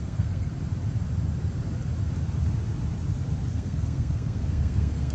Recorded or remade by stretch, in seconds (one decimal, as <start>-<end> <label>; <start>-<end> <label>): 0.0-0.5 remade; 0.5-3.5 recorded; 3.5-5.1 remade